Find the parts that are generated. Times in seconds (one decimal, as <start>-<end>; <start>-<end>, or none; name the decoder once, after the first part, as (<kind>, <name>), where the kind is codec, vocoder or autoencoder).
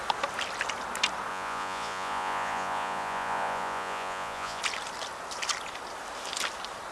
1.3-4.6 (vocoder, Vocos)